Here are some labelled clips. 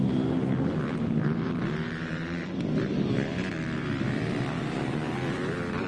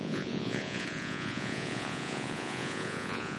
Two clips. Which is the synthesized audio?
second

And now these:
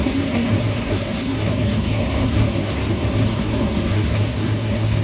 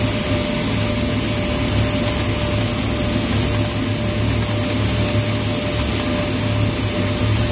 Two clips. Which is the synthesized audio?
first